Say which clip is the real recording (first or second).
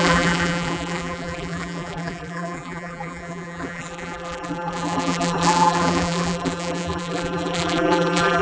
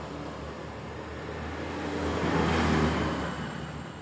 second